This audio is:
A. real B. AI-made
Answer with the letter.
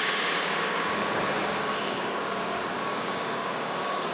B